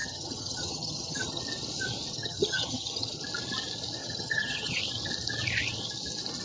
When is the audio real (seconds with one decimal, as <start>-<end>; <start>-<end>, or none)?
1.4-2.1; 3.2-4.0; 4.8-6.4